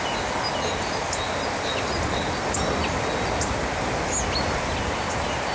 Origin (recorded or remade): recorded